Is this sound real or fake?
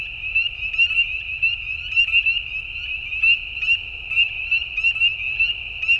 real